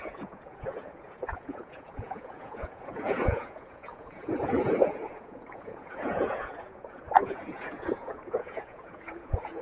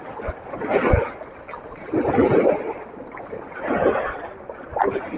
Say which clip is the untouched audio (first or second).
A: second